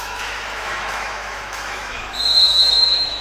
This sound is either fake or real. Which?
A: fake